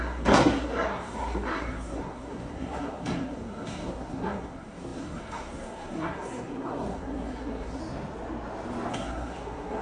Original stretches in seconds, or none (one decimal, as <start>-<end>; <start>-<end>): 7.8-8.9